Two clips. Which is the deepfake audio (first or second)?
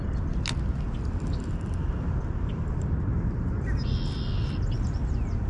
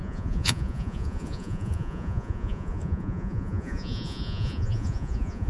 second